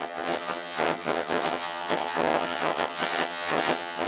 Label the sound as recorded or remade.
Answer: remade